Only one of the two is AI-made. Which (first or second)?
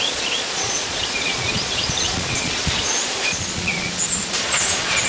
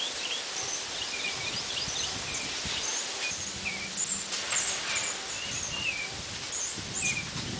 first